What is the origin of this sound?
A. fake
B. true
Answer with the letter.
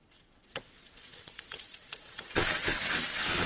A